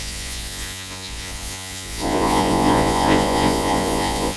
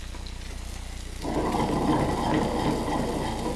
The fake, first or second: first